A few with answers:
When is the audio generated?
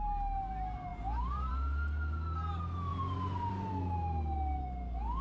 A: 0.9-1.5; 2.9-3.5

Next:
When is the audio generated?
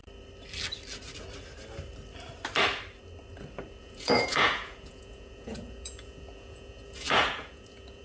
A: 3.8-8.0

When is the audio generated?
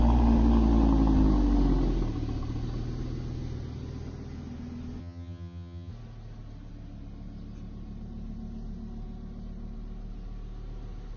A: 5.0-5.9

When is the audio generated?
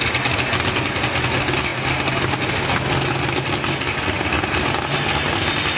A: none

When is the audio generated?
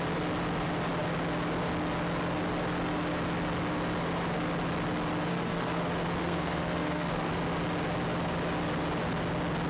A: 5.3-5.8; 6.2-7.3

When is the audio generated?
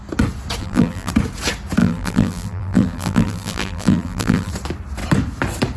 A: 0.6-1.1; 1.8-4.5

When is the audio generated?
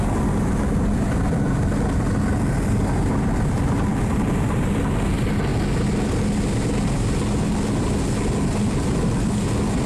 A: 3.9-5.1